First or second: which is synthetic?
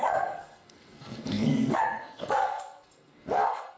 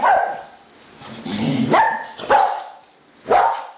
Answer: first